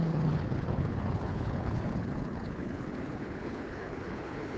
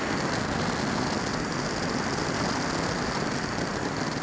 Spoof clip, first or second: first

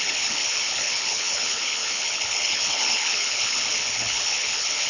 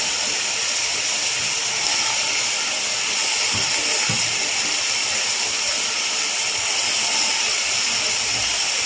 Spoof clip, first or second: first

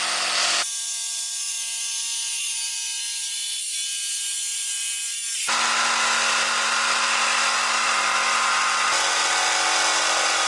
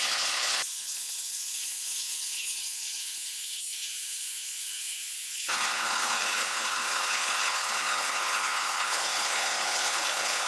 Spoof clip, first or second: second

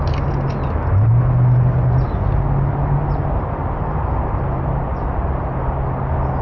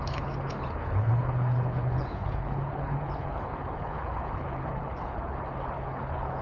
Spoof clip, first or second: second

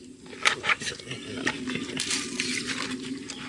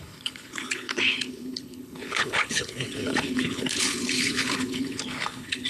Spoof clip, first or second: second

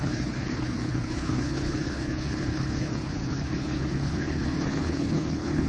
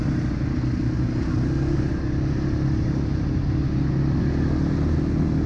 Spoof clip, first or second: first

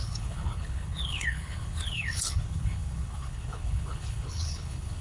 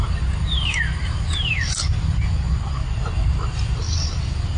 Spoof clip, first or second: first